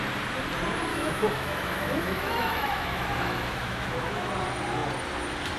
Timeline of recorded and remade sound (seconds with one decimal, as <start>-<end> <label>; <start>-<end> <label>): 0.0-0.9 recorded; 0.9-4.3 remade; 4.3-5.6 recorded